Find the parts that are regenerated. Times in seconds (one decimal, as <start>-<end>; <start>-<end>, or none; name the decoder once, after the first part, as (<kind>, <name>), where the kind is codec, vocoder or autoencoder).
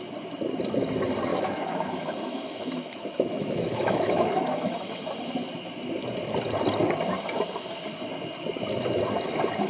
1.3-4.7 (autoencoder, DAC-VAE)